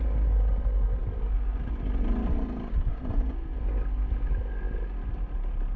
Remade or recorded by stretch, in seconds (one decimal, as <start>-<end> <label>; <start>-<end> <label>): 0.0-5.8 recorded